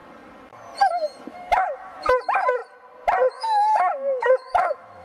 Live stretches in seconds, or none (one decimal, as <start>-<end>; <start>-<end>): 0.0-1.3; 2.6-3.3